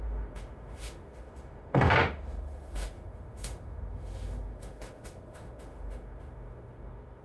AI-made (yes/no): yes